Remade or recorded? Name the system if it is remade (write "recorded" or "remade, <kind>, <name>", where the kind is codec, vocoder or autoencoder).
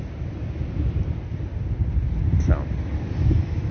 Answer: recorded